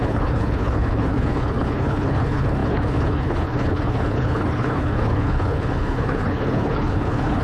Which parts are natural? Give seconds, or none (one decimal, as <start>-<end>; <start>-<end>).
none

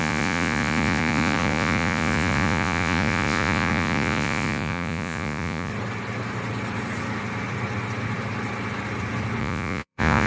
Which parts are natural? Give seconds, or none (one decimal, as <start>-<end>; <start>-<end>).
5.7-9.4

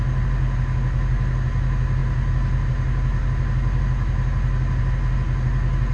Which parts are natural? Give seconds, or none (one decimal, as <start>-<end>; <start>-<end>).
0.0-5.9